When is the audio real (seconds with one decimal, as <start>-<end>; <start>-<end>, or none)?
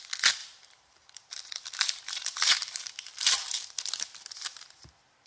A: 0.0-0.4; 3.6-5.3